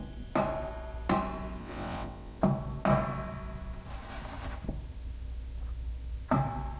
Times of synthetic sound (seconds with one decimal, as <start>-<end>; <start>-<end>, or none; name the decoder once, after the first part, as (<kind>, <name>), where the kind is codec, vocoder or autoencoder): 1.6-2.4 (vocoder, WaveNeXt)